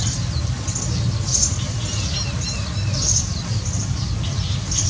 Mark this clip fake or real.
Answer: real